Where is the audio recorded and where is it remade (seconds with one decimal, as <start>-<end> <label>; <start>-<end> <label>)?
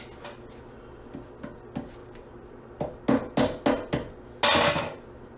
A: 0.0-2.0 recorded; 2.0-2.9 remade; 2.9-5.4 recorded